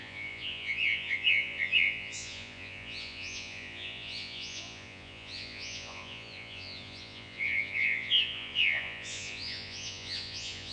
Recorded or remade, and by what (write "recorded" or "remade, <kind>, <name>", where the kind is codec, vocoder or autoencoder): remade, vocoder, Vocos